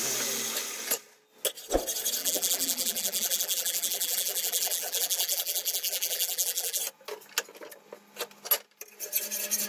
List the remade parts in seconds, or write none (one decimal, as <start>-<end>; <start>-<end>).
2.2-6.8